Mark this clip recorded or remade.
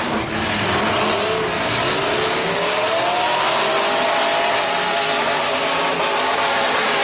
recorded